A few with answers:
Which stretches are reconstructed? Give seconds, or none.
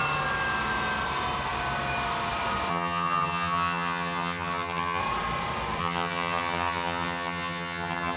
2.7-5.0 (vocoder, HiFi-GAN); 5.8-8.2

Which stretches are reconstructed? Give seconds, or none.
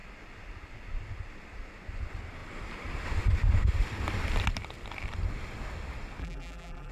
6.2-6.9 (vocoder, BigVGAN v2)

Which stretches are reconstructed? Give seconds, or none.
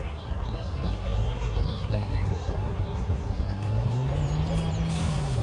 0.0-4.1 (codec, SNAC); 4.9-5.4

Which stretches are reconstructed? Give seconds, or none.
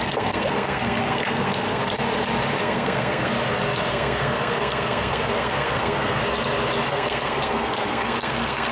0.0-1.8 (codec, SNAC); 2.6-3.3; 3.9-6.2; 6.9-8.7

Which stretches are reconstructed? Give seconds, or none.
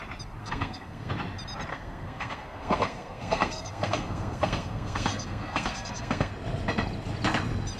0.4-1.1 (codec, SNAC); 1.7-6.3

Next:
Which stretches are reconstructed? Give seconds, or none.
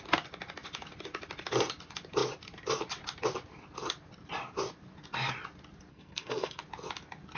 5.9-6.6 (codec, SNAC)